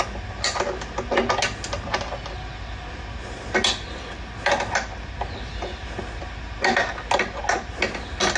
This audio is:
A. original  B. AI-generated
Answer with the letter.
A